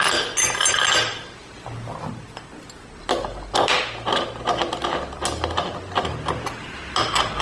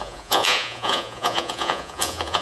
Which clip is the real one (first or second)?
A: first